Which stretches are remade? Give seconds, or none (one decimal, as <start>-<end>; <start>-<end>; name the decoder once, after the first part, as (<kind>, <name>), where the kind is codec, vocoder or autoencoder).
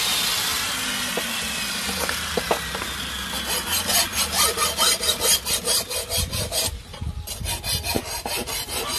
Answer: none